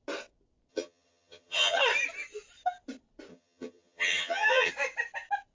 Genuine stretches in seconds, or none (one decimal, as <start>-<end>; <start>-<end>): 0.0-0.7; 1.8-3.3; 4.7-5.5